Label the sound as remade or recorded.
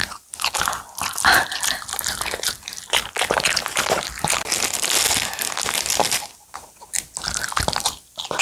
recorded